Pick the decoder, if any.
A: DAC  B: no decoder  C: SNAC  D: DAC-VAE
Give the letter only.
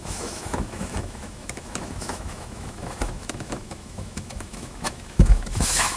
D